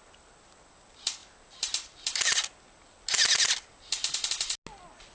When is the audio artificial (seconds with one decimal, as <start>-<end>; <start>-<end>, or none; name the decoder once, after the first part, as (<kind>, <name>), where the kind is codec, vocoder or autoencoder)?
none